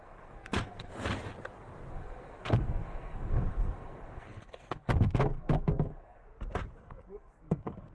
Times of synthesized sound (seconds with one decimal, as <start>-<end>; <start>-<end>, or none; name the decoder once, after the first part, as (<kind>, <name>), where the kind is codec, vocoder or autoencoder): 0.0-0.9 (codec, SNAC); 1.9-6.2; 6.8-7.9